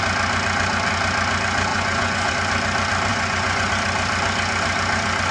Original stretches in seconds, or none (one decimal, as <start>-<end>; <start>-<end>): 0.0-1.7; 2.3-3.1; 3.7-5.3